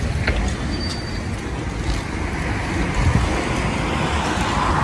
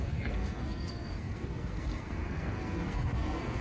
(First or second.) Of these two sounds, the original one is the first